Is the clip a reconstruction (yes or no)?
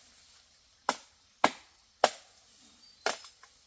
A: no